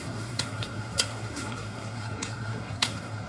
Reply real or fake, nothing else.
fake